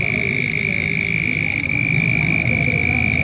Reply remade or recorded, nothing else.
recorded